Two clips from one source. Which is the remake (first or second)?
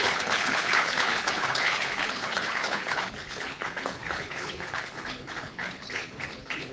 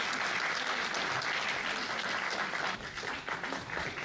first